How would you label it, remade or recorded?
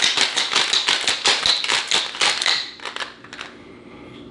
recorded